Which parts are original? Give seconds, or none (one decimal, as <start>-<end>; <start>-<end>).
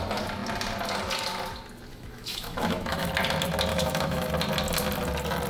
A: 0.0-1.9; 3.1-3.7; 4.3-5.5